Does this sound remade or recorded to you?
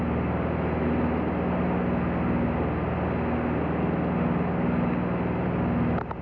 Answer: recorded